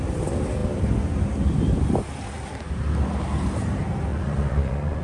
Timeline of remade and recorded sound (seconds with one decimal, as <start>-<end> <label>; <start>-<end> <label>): 0.0-4.1 recorded; 4.1-5.0 remade